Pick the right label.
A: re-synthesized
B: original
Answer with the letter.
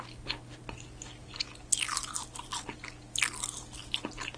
B